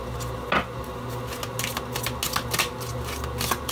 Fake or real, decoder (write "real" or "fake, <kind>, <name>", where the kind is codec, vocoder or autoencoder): real